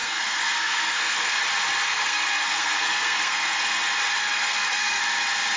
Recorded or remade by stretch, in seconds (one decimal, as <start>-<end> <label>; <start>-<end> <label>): 0.0-1.4 remade; 1.4-1.9 recorded; 1.9-3.8 remade; 3.8-4.2 recorded; 4.2-5.0 remade; 5.0-5.6 recorded